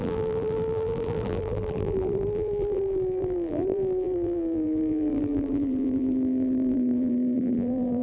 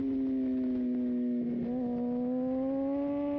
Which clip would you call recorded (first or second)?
second